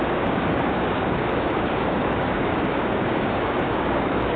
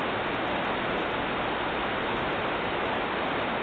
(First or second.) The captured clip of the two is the second